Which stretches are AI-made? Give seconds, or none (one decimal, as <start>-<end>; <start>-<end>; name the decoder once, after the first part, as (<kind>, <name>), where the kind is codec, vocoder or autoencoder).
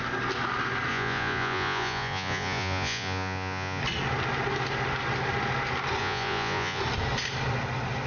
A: 0.9-3.8 (vocoder, Vocos); 6.0-6.8